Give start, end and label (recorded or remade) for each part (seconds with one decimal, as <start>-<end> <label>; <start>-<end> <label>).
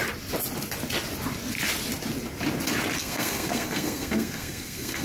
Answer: 0.0-3.0 recorded; 3.0-5.0 remade